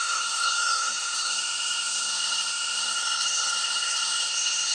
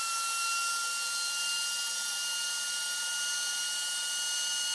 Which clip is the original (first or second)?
second